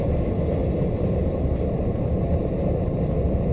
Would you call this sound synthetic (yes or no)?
yes